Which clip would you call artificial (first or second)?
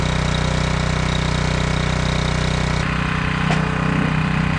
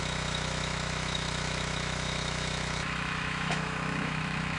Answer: second